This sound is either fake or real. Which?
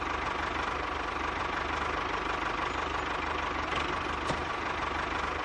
real